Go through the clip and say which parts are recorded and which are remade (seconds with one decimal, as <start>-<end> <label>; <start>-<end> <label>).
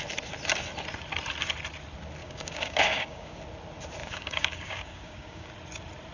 0.0-2.2 recorded; 2.2-3.4 remade; 3.4-4.0 recorded; 4.0-5.5 remade; 5.5-6.1 recorded